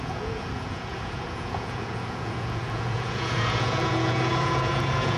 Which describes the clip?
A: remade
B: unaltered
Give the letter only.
A